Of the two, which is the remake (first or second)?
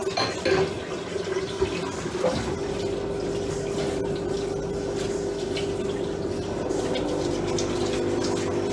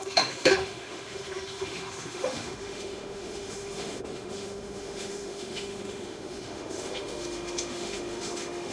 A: second